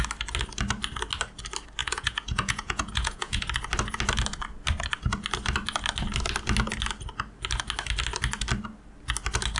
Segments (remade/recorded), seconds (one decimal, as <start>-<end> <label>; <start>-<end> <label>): 0.0-1.8 recorded; 1.8-3.4 remade; 3.4-9.6 recorded